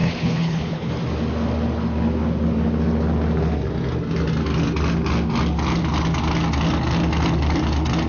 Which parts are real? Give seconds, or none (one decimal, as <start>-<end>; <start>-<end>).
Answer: 0.9-8.1